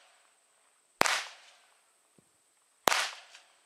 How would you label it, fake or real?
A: real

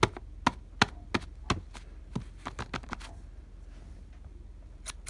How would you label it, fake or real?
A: real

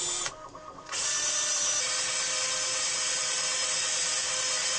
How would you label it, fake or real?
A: real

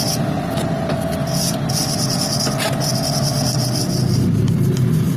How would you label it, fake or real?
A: real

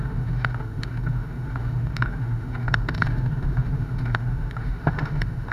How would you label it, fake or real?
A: fake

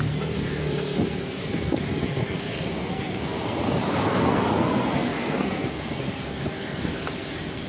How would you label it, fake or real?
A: fake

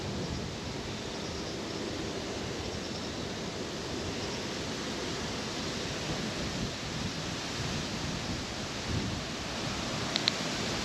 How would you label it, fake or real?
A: real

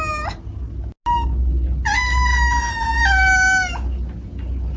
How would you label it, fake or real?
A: real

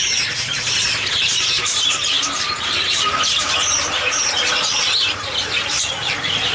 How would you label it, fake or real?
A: fake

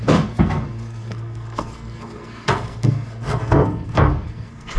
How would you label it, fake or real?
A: fake